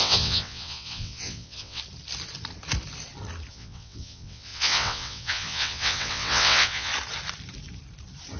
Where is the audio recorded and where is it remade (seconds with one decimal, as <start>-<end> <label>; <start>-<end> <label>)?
0.0-1.8 remade; 1.8-3.5 recorded; 3.5-6.9 remade; 6.9-8.4 recorded